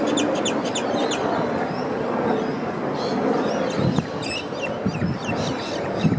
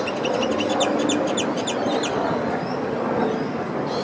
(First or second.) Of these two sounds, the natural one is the first